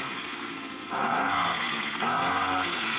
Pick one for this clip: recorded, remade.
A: remade